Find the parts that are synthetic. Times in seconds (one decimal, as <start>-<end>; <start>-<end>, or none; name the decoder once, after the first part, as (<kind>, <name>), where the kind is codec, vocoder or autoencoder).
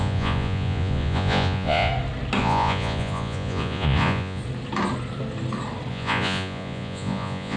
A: 0.0-1.9 (vocoder, Vocos); 2.4-4.4; 5.9-7.6